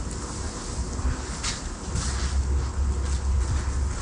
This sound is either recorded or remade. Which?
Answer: recorded